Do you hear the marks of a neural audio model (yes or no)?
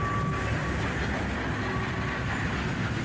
no